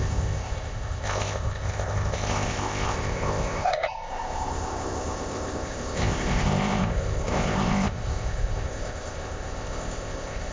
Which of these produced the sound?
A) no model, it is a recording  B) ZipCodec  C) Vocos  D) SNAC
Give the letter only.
B